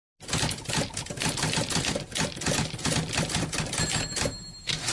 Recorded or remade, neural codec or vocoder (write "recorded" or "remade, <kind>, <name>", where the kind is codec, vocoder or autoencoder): recorded